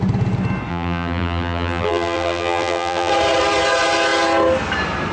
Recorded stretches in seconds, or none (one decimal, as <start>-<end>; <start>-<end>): 0.0-0.7; 3.1-5.1